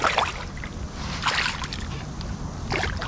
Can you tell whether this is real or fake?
real